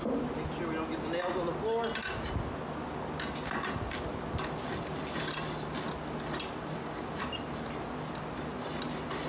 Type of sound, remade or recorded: recorded